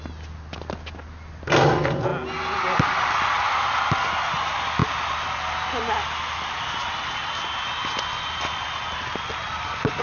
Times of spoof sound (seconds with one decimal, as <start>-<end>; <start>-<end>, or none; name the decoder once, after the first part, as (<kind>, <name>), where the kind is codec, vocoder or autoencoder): none